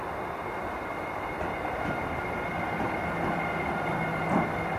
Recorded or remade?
remade